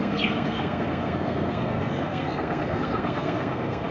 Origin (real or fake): fake